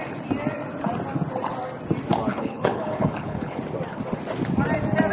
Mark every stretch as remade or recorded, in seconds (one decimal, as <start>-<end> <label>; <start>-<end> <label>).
0.0-2.3 recorded; 2.3-3.6 remade; 3.6-5.1 recorded